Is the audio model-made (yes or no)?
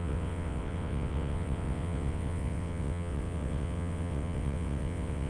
yes